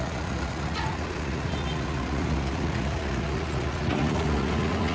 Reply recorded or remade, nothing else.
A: remade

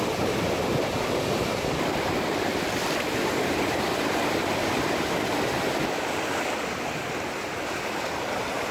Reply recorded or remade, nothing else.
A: recorded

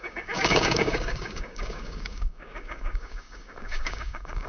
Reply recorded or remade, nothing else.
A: remade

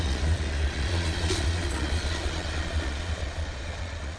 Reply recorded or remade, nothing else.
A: remade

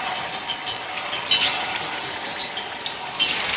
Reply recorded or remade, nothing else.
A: recorded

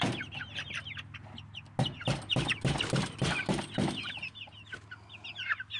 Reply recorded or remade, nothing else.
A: recorded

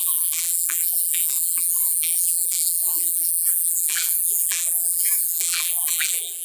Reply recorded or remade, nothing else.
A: remade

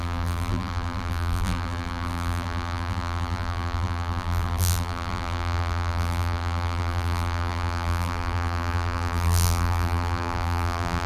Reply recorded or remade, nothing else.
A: remade